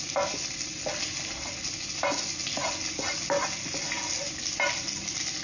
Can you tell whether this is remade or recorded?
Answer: recorded